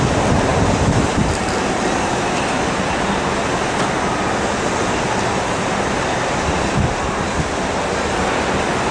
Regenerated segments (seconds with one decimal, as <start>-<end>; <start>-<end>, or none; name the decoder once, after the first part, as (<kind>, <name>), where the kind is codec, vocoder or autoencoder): none